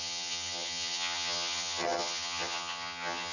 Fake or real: fake